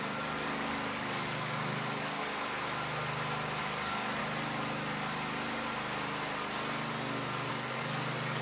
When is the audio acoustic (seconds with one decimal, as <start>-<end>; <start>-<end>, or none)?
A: 2.2-3.6; 4.2-7.5